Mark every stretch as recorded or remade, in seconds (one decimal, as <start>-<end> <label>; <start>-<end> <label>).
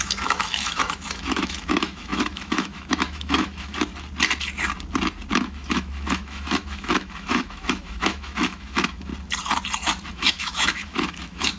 0.0-3.9 remade; 3.9-5.3 recorded; 5.3-9.1 remade; 9.1-10.1 recorded; 10.1-11.6 remade